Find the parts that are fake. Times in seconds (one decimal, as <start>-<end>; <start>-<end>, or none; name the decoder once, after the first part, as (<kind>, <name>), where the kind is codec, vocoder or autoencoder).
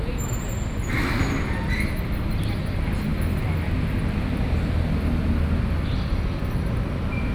none